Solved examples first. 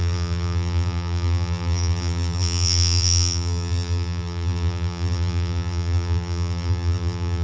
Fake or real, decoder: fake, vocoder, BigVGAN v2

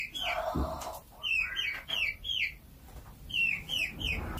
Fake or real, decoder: real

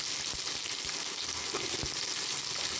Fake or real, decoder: real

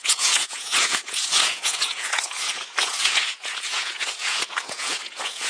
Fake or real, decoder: fake, vocoder, Vocos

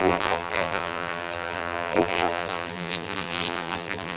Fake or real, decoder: fake, vocoder, BigVGAN v2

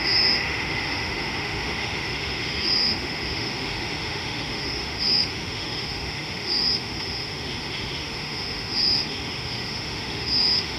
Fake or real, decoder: fake, autoencoder, DAC-VAE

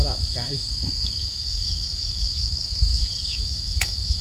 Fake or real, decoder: fake, autoencoder, DAC-VAE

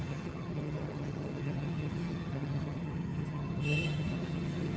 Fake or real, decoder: fake, vocoder, HiFi-GAN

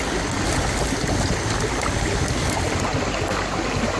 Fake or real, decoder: real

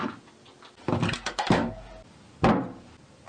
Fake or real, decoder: real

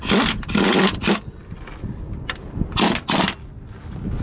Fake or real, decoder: real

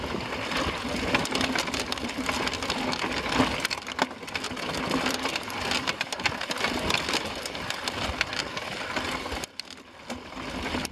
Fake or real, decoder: real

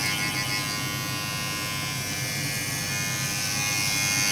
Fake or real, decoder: real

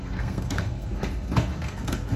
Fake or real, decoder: fake, codec, SNAC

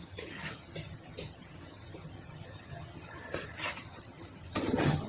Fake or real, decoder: fake, vocoder, HiFi-GAN